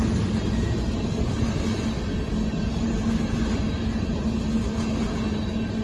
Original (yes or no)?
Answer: yes